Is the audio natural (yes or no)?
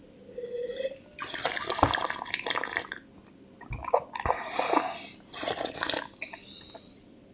yes